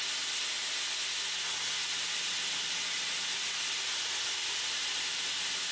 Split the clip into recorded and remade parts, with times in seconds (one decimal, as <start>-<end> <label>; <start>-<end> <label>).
0.0-1.8 recorded; 1.8-5.2 remade; 5.2-5.7 recorded